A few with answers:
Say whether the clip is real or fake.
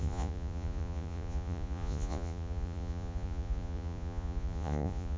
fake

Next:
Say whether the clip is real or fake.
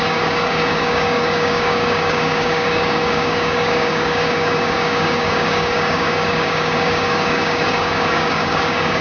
fake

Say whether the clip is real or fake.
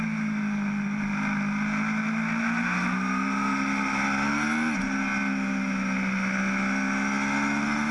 real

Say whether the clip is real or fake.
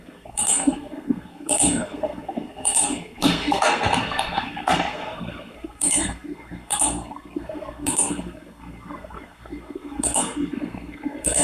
fake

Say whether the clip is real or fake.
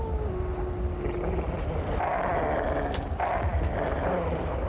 real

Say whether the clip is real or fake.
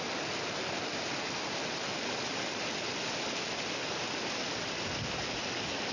real